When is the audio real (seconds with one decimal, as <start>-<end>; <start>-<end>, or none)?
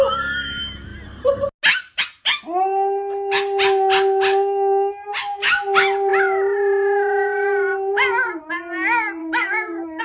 0.0-9.2